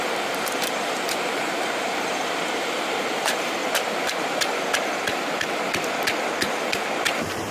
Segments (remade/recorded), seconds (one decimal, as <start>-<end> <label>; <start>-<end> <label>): 0.0-3.6 remade; 3.6-6.6 recorded; 6.6-7.5 remade